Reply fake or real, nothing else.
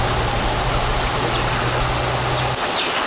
real